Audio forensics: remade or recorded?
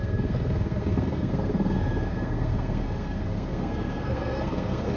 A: remade